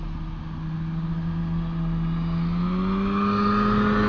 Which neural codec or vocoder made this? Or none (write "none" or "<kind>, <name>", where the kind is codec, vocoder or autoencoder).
none